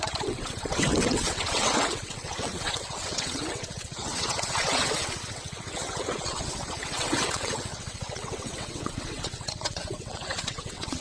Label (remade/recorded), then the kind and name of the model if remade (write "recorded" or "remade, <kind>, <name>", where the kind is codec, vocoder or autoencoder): remade, vocoder, WaveNeXt